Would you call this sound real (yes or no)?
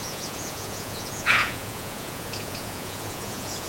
no